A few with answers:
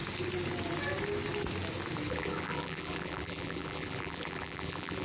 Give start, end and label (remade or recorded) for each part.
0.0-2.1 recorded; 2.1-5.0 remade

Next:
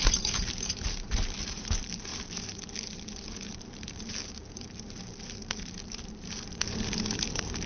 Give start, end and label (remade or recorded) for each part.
0.0-7.7 remade

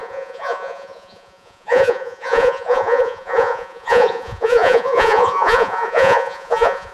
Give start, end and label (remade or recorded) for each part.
0.0-6.9 remade

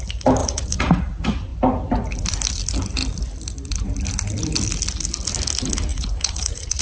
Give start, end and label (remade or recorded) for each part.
0.0-0.4 recorded; 0.4-1.0 remade; 1.0-5.9 recorded; 5.9-6.8 remade

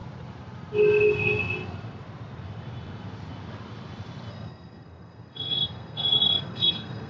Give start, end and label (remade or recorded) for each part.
0.0-4.3 recorded; 4.3-7.1 remade

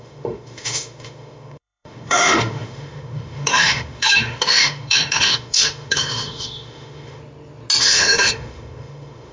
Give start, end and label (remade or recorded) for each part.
0.0-7.2 remade; 7.2-7.8 recorded; 7.8-9.3 remade

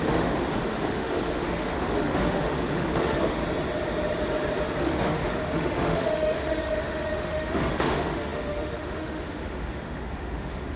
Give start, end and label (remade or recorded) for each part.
0.0-3.4 remade; 3.4-4.8 recorded; 4.8-10.8 remade